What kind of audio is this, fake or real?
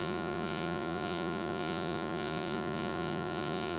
fake